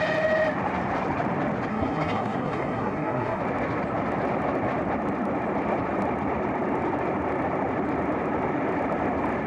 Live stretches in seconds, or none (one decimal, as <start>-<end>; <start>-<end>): 0.0-1.7; 3.4-9.5